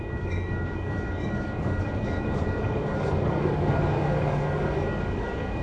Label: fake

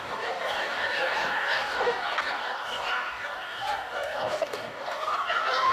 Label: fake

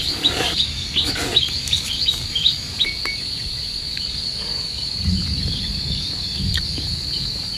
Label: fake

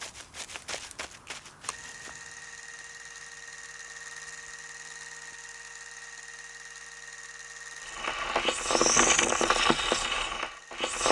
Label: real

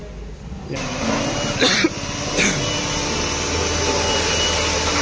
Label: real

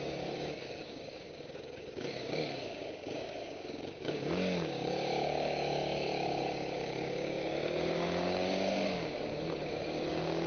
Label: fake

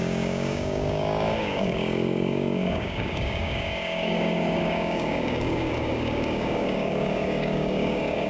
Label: fake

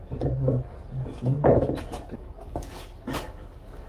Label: fake